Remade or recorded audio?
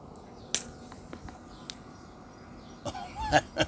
recorded